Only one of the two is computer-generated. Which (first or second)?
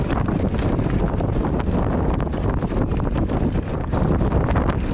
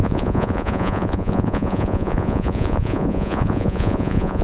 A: second